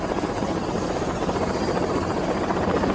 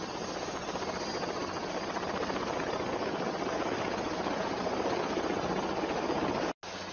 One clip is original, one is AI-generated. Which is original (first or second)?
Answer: second